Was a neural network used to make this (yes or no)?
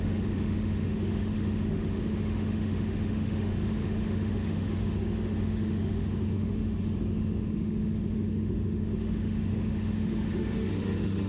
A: yes